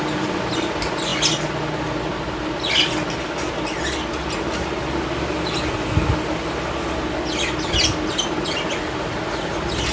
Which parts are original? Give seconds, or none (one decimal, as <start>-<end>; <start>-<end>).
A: 0.0-9.9